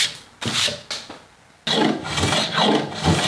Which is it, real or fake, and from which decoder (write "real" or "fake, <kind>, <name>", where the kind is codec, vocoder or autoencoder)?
real